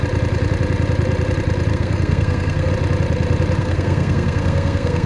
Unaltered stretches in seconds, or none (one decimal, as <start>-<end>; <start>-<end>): 0.0-1.7; 2.7-3.6